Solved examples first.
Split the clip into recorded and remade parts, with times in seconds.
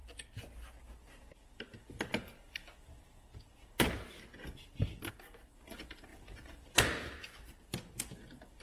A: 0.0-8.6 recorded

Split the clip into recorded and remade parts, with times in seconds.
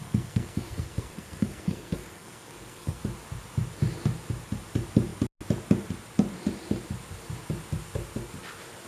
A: 0.0-3.0 remade; 3.0-8.9 recorded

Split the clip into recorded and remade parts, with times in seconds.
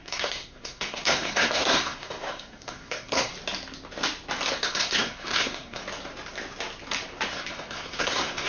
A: 0.0-3.3 remade; 3.3-4.5 recorded; 4.5-5.8 remade; 5.8-7.3 recorded; 7.3-8.5 remade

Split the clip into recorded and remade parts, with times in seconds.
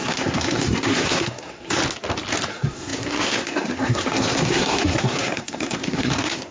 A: 0.0-1.8 remade; 1.8-2.5 recorded; 2.5-6.5 remade